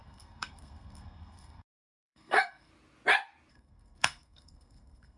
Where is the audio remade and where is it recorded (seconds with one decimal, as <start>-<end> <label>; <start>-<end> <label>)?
0.0-2.7 remade; 2.7-3.5 recorded; 3.5-5.2 remade